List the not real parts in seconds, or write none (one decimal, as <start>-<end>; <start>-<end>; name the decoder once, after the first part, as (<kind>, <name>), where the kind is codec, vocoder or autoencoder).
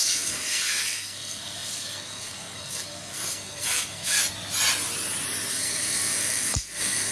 0.0-4.2 (codec, SNAC); 5.5-7.1